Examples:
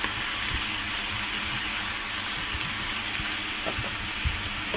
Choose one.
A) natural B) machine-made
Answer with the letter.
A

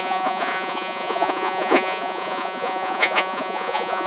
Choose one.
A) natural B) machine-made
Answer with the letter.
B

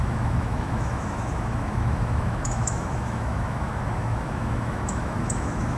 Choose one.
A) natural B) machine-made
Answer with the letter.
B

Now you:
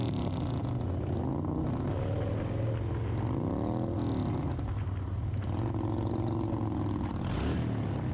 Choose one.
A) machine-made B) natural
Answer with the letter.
B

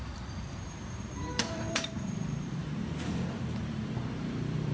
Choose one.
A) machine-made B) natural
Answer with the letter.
A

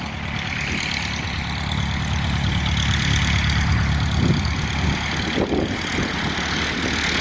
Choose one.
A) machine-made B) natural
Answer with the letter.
B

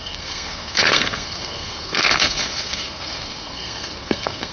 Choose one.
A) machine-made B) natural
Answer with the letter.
A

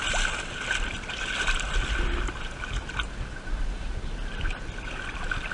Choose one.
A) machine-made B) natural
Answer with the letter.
B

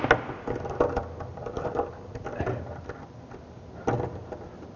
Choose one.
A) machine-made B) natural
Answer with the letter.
B